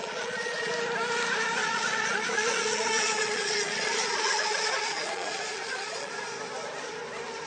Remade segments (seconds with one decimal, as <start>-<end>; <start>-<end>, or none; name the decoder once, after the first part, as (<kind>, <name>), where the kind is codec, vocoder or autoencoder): 0.0-0.7 (vocoder, Vocos); 1.6-6.1